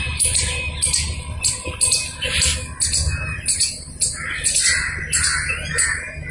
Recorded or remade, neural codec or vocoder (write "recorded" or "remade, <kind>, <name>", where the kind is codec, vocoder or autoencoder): recorded